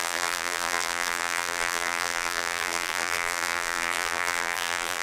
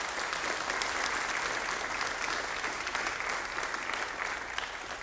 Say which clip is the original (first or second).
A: second